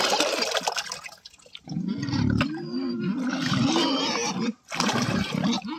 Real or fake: real